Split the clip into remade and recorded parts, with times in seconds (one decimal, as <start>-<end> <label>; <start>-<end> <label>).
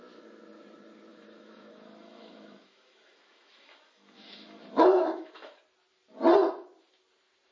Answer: 0.0-1.1 recorded; 1.1-5.6 remade; 5.6-7.5 recorded